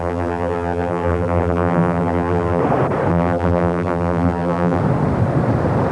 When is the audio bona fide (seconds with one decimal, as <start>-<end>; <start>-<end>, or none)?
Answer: 2.6-3.1; 4.8-5.9

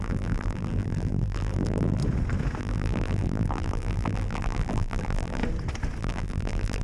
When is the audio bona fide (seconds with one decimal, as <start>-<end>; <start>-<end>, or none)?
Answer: 2.0-2.6; 5.4-6.0

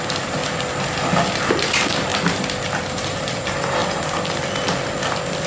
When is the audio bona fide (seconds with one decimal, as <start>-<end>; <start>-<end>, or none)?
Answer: 0.4-1.5; 2.1-2.8; 3.8-5.5

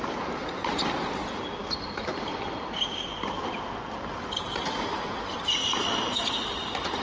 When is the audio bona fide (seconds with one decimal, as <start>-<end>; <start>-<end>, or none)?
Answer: 0.0-7.0

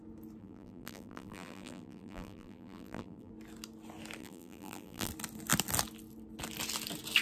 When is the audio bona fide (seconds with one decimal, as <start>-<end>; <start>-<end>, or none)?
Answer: 0.0-0.4; 3.3-4.2; 5.1-7.2

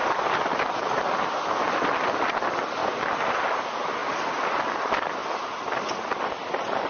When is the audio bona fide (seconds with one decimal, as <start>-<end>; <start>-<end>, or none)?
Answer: 0.8-2.8; 3.6-4.0; 4.5-6.9

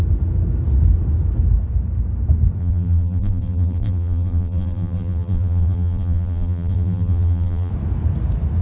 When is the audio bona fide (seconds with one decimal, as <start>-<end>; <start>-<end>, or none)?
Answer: 0.0-2.6; 7.7-8.6